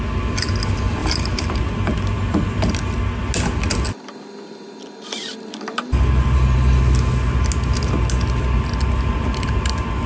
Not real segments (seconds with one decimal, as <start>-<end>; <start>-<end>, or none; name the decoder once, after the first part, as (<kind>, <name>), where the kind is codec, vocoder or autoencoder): 1.0-1.6 (vocoder, BigVGAN v2)